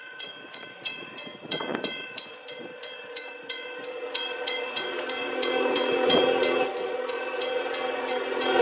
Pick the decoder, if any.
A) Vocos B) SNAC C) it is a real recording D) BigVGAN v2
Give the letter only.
A